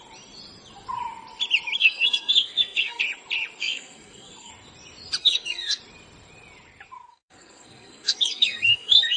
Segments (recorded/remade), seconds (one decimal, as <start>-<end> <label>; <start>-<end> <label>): 0.0-1.8 recorded; 1.8-3.0 remade; 3.0-3.6 recorded; 3.6-4.5 remade; 4.5-5.2 recorded; 5.2-5.8 remade; 5.8-7.1 recorded; 7.1-9.2 remade